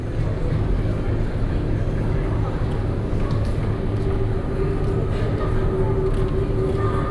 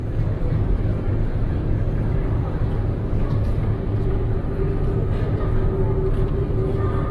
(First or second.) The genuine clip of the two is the first